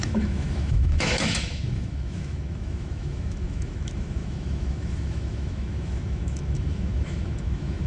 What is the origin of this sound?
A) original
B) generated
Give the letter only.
B